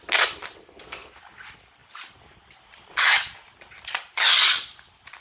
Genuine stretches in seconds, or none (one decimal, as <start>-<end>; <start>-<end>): 0.0-0.7; 1.2-5.2